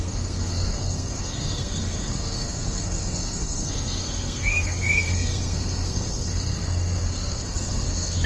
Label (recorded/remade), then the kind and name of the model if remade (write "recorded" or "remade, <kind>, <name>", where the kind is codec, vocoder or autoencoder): remade, codec, SNAC